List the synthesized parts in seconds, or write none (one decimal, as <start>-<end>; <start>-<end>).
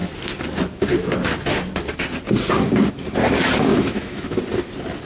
3.7-4.4